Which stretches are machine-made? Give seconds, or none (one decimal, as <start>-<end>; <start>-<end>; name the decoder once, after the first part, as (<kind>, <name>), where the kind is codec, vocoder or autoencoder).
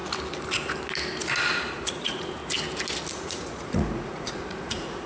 1.7-2.4 (vocoder, Vocos); 3.1-5.1